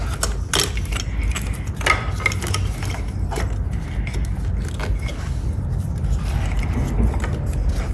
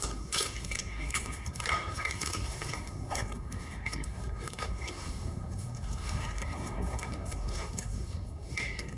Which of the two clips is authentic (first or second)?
first